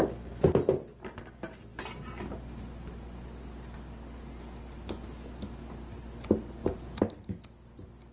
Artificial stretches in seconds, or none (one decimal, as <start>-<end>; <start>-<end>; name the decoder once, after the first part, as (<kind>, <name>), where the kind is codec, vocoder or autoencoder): 6.6-7.3 (vocoder, BigVGAN v2)